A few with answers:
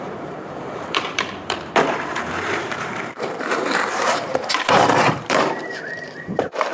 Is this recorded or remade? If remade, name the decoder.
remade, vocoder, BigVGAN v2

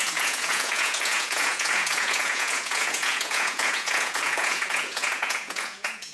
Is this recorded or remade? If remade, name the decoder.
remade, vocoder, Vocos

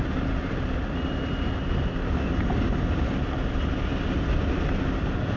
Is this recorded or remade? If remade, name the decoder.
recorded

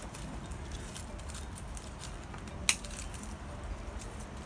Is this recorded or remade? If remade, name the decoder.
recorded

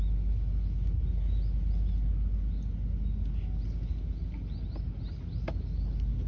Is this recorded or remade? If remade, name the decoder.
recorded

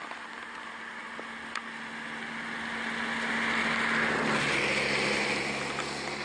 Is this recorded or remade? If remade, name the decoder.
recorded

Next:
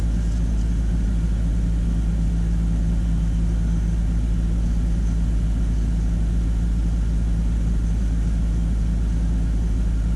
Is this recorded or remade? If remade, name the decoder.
recorded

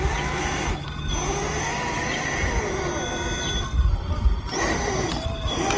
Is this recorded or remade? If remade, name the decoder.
recorded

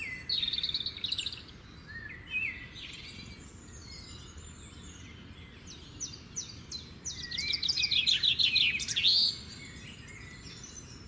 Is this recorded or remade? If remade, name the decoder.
recorded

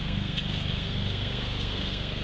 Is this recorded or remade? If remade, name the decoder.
remade, codec, SNAC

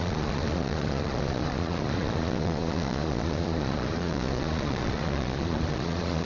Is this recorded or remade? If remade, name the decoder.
remade, vocoder, Vocos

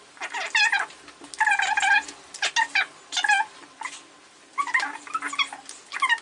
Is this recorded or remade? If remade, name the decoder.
recorded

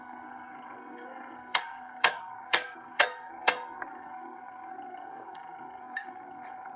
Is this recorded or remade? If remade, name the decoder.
remade, codec, SNAC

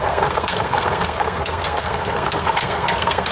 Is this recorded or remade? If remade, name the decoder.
remade, codec, SNAC